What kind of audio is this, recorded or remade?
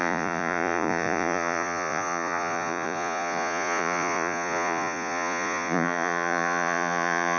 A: remade